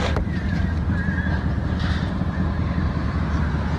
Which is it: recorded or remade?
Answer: remade